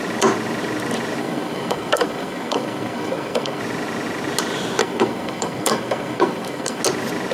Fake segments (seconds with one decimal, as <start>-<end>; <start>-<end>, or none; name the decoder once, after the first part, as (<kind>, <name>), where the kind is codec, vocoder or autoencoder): 1.2-3.6 (codec, SNAC); 4.8-6.8